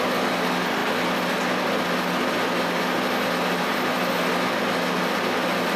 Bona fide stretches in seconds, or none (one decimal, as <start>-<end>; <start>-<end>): 0.0-5.8